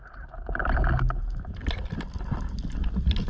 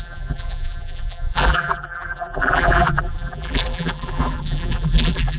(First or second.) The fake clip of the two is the second